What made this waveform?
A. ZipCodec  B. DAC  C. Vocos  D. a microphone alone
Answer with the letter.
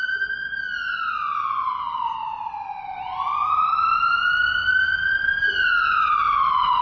D